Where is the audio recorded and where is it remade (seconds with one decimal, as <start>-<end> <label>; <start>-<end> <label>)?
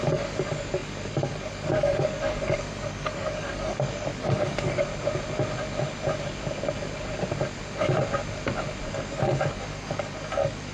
0.0-4.9 remade; 4.9-8.9 recorded; 8.9-10.7 remade